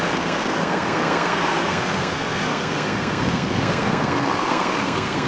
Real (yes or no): no